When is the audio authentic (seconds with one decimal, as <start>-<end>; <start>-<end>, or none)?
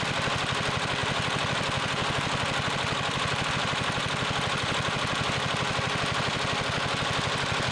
0.0-7.7